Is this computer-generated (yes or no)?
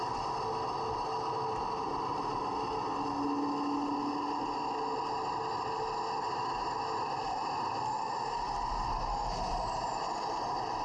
no